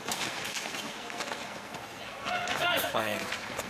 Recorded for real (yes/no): no